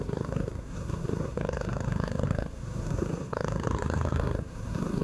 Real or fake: fake